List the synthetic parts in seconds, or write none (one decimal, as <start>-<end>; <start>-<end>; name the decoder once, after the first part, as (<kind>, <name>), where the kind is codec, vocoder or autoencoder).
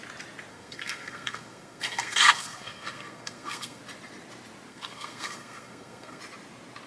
0.5-3.8 (codec, SNAC); 4.7-6.2